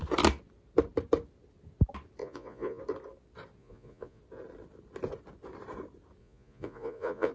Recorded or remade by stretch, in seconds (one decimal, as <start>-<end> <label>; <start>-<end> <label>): 0.0-2.2 recorded; 2.2-2.8 remade; 2.8-3.6 recorded; 3.6-4.2 remade; 4.2-6.2 recorded; 6.2-7.3 remade